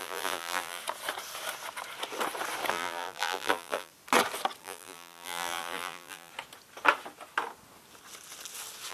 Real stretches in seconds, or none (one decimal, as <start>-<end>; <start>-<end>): 0.8-2.7; 3.9-4.6; 6.3-8.9